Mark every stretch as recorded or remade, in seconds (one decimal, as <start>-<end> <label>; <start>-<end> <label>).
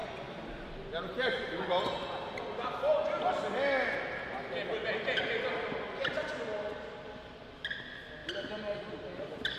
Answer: 0.0-9.6 recorded